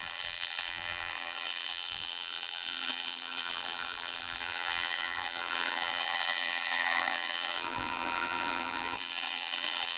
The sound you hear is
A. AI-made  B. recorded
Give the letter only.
A